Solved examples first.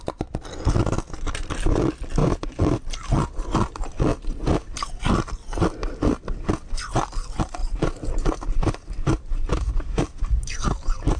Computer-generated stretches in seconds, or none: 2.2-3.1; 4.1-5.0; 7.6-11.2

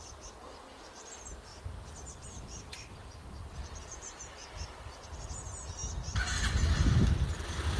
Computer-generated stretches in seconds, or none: 0.0-1.5; 2.1-5.8; 7.2-7.8

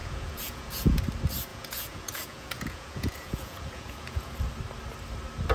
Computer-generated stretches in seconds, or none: 0.0-1.0; 1.5-4.3

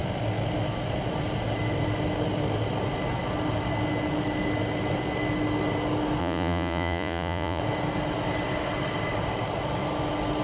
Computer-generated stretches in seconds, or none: 6.2-7.6

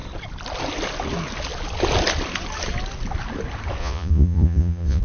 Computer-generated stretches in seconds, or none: 3.8-5.0